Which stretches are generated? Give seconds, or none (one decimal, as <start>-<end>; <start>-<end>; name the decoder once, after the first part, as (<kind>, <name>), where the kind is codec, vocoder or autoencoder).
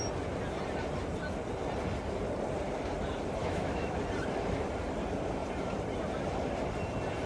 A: 3.4-4.0 (autoencoder, DAC-VAE)